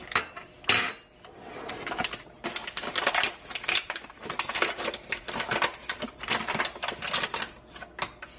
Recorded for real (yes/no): yes